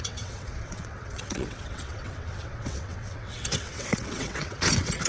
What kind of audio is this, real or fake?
fake